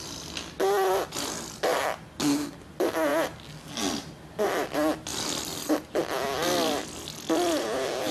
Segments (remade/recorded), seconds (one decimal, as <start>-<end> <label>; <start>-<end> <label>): 0.0-5.1 recorded; 5.1-5.7 remade; 5.7-8.1 recorded